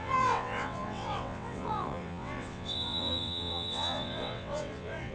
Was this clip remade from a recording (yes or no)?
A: yes